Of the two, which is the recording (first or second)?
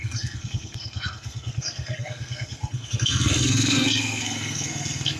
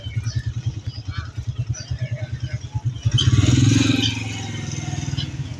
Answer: second